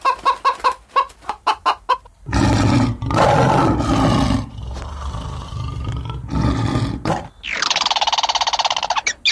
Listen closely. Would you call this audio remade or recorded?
recorded